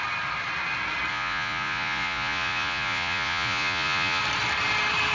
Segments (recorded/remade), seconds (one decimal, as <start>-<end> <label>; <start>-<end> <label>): 0.0-1.1 recorded; 1.1-4.2 remade; 4.2-5.1 recorded